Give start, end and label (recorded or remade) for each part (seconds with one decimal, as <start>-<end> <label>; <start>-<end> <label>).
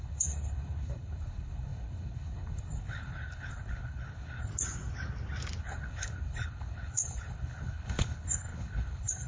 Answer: 0.0-4.5 remade; 4.5-5.6 recorded; 5.6-9.3 remade